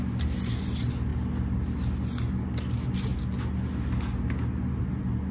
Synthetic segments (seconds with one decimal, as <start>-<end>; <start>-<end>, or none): none